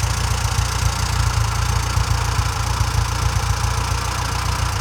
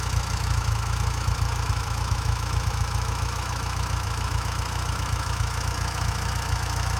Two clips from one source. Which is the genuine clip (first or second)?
first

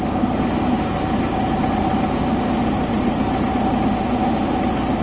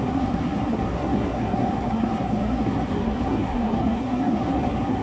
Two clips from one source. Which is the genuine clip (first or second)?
first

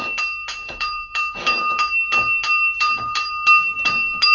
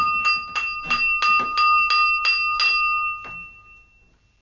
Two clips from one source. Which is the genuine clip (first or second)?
second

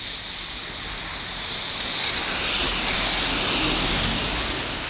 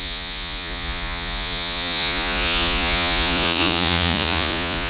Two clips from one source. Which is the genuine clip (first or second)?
first